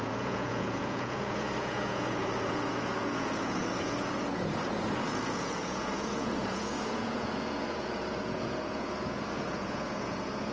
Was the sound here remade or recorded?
remade